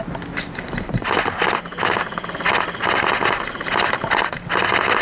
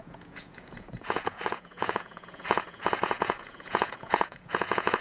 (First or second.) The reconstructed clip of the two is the second